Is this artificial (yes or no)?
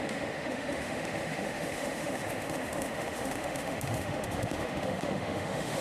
yes